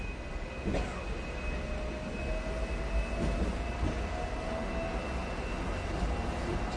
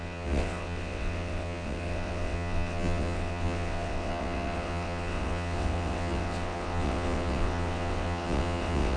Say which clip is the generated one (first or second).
second